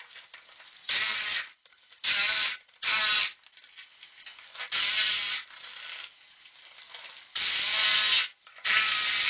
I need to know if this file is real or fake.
real